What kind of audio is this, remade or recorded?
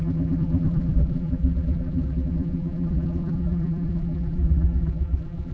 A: remade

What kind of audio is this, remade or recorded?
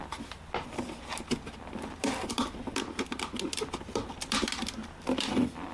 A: recorded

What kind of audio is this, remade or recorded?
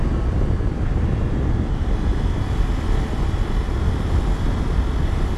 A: recorded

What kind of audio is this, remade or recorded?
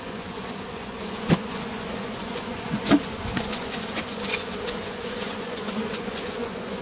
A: remade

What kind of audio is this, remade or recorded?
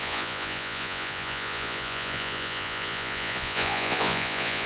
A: remade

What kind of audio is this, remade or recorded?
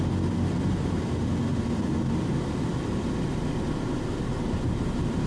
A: recorded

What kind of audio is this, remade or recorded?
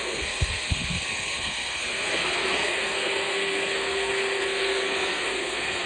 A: remade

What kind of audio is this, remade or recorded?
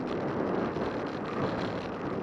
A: recorded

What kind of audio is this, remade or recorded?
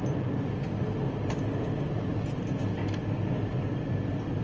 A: recorded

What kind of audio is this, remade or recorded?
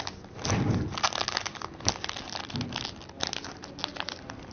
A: recorded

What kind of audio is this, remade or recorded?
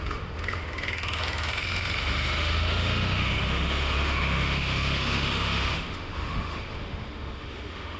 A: remade